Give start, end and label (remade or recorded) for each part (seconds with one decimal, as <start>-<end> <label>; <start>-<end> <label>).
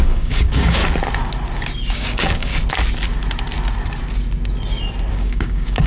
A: 0.0-0.8 remade; 0.8-1.9 recorded; 1.9-2.5 remade; 2.5-5.1 recorded; 5.1-5.9 remade